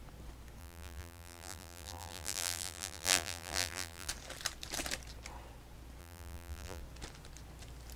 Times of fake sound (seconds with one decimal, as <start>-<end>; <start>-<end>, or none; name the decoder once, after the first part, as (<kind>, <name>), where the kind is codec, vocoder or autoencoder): 0.6-4.1 (vocoder, BigVGAN v2); 6.0-6.8